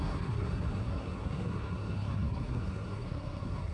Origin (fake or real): fake